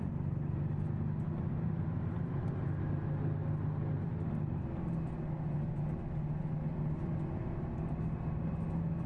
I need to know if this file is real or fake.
real